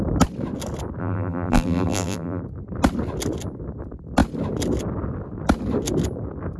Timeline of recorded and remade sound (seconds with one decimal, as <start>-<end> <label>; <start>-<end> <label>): 0.0-1.0 recorded; 1.0-2.4 remade; 2.4-6.6 recorded